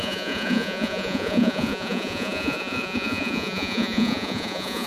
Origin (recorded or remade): remade